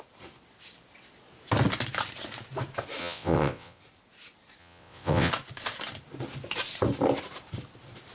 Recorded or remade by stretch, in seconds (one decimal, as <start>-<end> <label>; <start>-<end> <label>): 0.0-3.0 recorded; 3.0-3.8 remade; 3.8-4.6 recorded; 4.6-5.3 remade; 5.3-8.1 recorded